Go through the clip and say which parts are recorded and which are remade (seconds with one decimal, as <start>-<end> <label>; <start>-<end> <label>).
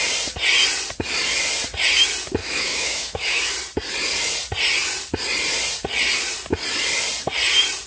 0.0-2.4 recorded; 2.4-3.5 remade; 3.5-7.9 recorded